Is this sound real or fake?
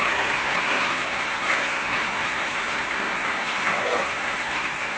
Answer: fake